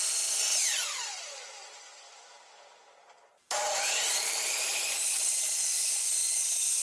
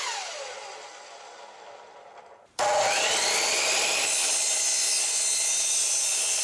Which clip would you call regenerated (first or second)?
first